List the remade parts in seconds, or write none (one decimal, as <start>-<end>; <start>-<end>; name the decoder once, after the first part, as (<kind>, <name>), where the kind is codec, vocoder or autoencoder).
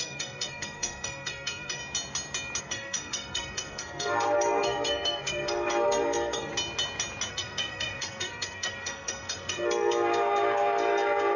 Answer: 0.0-1.8 (codec, SNAC); 2.6-6.5; 7.3-11.4